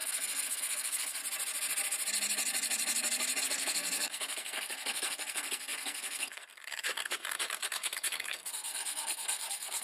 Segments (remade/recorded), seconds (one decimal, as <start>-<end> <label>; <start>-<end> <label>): 0.0-1.2 remade; 1.2-3.4 recorded; 3.4-9.8 remade